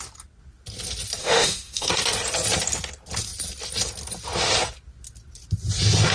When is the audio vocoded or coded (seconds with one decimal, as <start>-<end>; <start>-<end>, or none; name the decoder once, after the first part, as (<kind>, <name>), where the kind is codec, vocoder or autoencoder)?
1.2-1.9 (autoencoder, DAC-VAE)